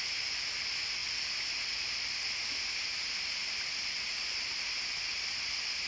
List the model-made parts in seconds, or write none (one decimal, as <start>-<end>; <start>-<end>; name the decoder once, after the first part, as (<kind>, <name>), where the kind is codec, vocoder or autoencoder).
1.0-2.3 (vocoder, BigVGAN v2); 3.4-4.8